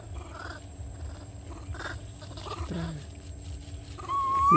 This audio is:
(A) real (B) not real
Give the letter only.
A